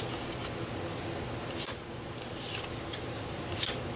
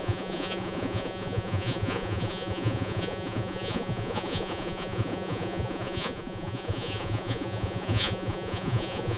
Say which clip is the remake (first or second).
second